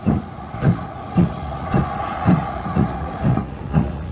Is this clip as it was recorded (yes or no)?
no